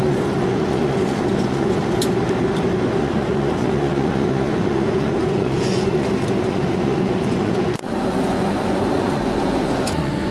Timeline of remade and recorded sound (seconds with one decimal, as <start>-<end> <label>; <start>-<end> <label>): 0.0-1.8 remade; 1.8-3.0 recorded; 3.0-10.3 remade